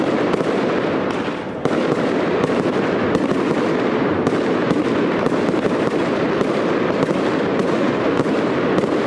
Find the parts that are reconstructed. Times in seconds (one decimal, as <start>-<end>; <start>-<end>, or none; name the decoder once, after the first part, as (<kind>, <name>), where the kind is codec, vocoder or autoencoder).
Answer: 7.5-8.0 (vocoder, Vocos)